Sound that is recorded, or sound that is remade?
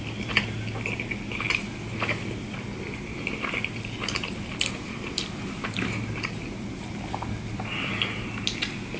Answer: recorded